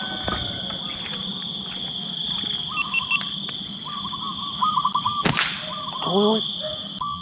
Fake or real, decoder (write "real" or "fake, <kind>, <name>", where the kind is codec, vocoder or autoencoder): real